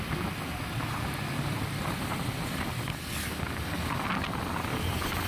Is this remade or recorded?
recorded